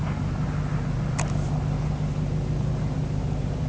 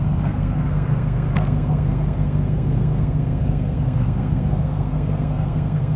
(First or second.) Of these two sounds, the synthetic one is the second